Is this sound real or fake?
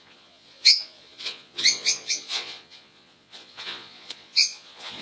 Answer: fake